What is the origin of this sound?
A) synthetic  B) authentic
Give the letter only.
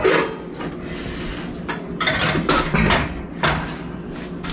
B